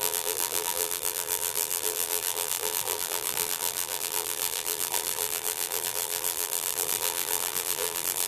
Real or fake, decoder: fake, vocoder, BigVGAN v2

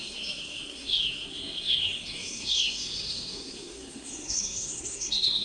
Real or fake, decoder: fake, codec, SNAC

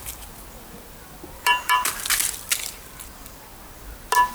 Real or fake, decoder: fake, vocoder, BigVGAN v2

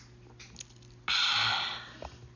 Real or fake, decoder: real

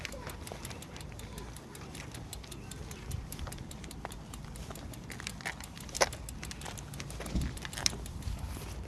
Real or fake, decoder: real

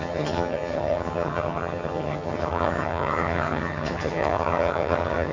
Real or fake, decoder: fake, vocoder, HiFi-GAN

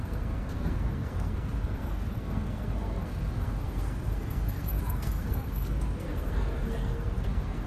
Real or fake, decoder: fake, codec, SNAC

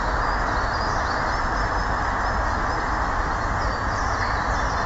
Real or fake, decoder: real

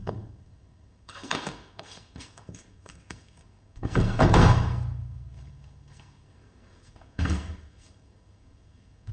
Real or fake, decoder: fake, codec, SNAC